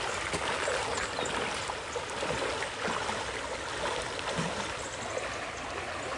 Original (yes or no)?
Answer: yes